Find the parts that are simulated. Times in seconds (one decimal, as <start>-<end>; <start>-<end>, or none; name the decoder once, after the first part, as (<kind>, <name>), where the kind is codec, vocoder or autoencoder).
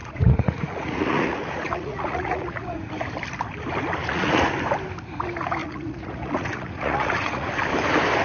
0.0-2.9 (vocoder, Vocos); 4.0-4.5; 5.6-7.5